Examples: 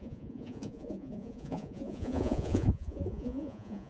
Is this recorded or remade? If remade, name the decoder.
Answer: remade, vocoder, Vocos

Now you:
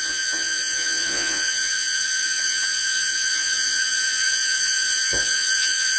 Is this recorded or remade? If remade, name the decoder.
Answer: remade, vocoder, Vocos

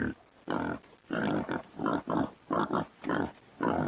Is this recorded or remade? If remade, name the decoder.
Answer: recorded